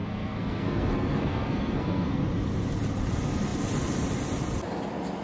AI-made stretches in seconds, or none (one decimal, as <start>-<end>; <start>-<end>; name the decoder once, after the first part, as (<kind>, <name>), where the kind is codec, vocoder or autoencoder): 0.0-2.2 (codec, SNAC)